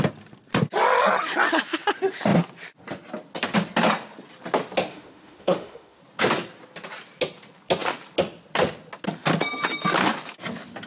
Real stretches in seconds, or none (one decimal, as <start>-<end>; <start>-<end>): 0.0-4.9; 6.0-10.9